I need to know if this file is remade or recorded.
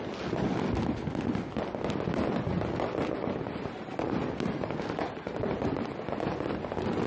recorded